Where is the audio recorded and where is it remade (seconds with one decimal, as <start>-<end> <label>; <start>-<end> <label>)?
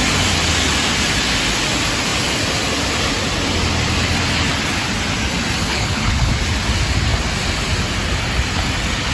0.0-5.6 recorded; 5.6-6.3 remade; 6.3-9.1 recorded